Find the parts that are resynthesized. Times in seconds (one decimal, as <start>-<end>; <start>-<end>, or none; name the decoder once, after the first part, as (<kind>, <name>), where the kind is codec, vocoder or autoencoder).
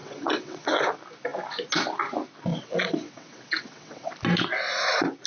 0.0-0.8 (vocoder, WaveNeXt); 2.5-4.1